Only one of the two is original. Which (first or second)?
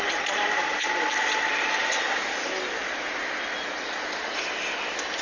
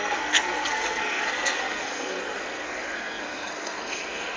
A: first